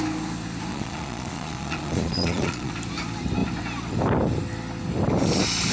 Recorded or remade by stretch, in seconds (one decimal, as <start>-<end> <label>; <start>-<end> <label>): 0.0-0.7 recorded; 0.7-2.7 remade; 2.7-5.7 recorded